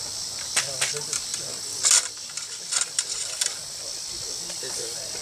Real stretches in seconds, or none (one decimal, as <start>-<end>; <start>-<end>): 0.0-5.2